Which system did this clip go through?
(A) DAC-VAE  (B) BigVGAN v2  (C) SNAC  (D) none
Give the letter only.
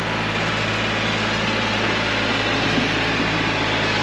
D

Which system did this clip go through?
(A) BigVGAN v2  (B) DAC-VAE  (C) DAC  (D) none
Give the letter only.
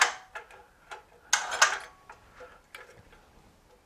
D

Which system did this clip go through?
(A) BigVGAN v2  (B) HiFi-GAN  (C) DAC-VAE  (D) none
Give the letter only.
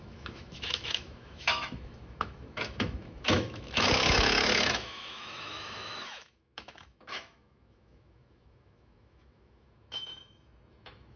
C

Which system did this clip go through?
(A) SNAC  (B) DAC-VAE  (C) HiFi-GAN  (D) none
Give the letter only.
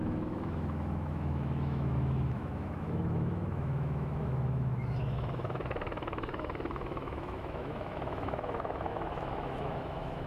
B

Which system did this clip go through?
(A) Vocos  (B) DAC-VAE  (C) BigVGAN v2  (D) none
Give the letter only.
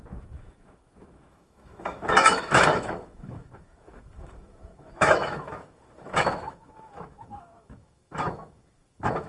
B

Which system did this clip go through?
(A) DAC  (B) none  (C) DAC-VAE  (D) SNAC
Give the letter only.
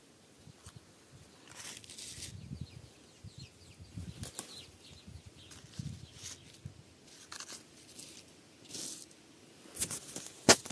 B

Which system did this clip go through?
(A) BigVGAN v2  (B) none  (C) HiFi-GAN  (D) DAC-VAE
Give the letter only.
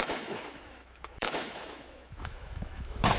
D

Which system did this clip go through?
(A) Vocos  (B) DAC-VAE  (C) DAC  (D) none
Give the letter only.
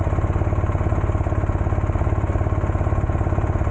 D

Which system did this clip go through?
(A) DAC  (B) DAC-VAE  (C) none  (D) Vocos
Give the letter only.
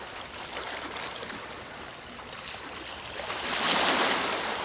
C